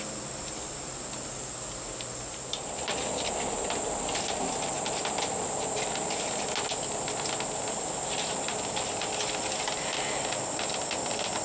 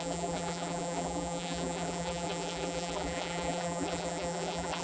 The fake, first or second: second